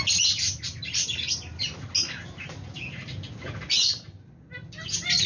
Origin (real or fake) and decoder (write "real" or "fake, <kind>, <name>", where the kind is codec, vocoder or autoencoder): real